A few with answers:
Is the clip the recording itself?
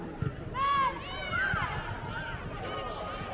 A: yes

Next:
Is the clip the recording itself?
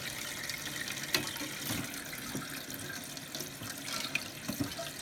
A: yes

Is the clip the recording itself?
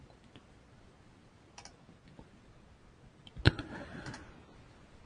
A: yes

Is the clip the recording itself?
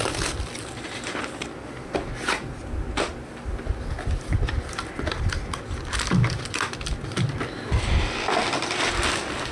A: yes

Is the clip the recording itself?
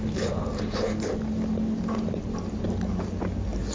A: yes